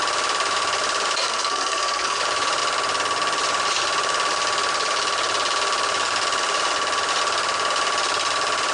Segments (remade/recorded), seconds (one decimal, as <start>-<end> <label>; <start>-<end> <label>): 0.0-1.2 recorded; 1.2-2.2 remade; 2.2-8.7 recorded